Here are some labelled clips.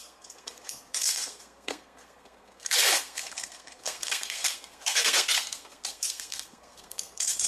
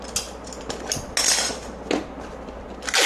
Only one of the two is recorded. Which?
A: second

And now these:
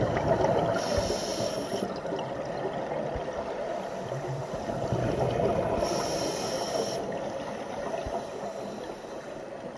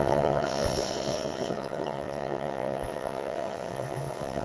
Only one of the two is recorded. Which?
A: first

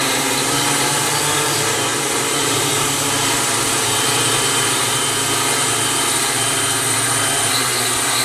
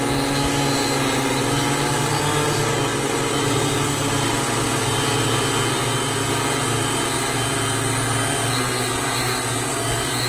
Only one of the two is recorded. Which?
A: second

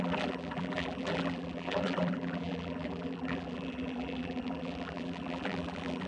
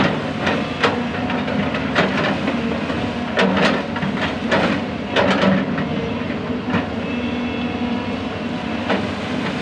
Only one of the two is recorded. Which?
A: second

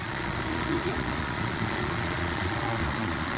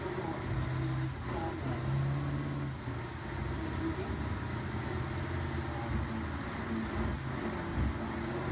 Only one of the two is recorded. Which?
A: second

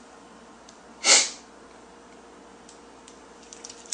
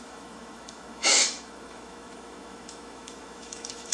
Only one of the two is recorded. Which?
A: first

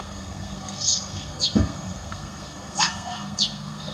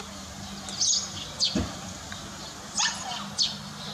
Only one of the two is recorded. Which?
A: second